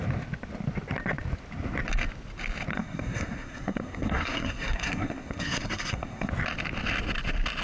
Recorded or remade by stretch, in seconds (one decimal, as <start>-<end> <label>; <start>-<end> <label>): 0.0-2.7 recorded; 2.7-6.3 remade; 6.3-7.6 recorded